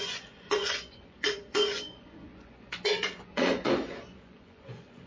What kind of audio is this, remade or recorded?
remade